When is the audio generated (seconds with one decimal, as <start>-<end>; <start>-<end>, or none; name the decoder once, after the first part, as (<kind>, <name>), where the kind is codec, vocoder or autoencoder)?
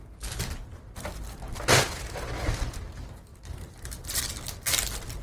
3.3-4.2 (vocoder, BigVGAN v2)